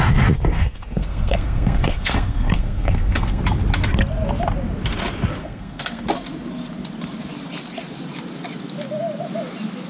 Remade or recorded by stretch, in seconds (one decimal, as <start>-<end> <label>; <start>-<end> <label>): 0.0-0.5 recorded; 0.5-3.4 remade; 3.4-5.4 recorded; 5.4-6.0 remade; 6.0-9.9 recorded